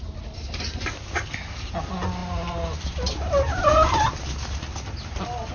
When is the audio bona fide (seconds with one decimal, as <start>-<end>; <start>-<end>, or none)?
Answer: 0.0-5.5